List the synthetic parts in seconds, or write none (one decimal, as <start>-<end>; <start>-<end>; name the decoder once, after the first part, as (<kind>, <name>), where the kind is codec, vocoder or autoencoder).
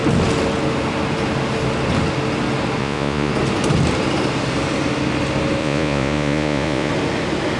2.8-3.3 (vocoder, Vocos); 5.6-6.9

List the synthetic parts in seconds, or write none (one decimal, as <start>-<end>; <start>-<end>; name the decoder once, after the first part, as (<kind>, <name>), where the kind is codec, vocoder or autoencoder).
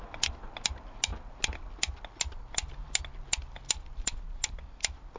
none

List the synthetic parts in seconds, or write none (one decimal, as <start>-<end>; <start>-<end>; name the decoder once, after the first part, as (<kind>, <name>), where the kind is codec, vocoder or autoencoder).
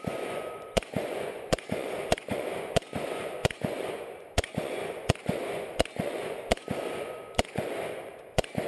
0.0-8.7 (vocoder, Vocos)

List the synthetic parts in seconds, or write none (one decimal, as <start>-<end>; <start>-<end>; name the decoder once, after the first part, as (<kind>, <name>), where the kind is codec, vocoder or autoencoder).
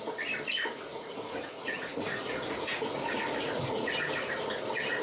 0.9-3.9 (vocoder, Vocos)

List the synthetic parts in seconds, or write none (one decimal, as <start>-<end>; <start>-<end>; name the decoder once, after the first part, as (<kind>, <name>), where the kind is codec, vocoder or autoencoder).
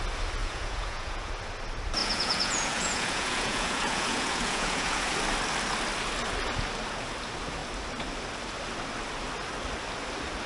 0.4-1.3 (vocoder, Vocos); 2.0-5.1